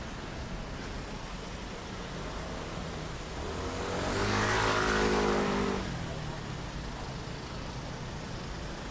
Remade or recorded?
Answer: recorded